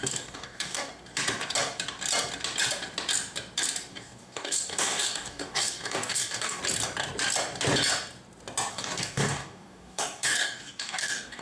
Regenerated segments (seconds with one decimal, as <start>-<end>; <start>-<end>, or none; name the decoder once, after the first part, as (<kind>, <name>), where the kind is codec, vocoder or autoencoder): 0.0-0.9 (codec, DAC); 3.9-6.6; 8.7-11.4